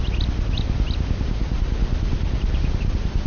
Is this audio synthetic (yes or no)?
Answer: no